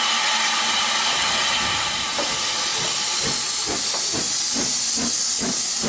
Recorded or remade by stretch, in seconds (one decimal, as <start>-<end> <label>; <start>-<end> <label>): 0.0-5.9 recorded